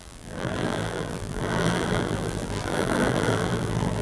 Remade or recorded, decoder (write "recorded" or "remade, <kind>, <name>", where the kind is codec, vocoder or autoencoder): remade, vocoder, BigVGAN v2